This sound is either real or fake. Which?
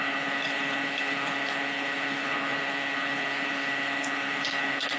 fake